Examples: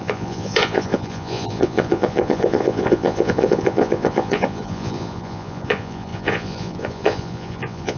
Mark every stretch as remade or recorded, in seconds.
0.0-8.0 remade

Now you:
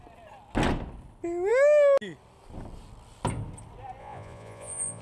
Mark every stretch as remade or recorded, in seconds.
0.0-4.0 recorded; 4.0-5.0 remade

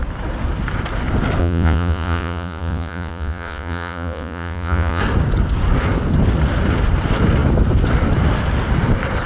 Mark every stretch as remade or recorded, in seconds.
0.0-1.4 recorded; 1.4-5.0 remade; 5.0-9.3 recorded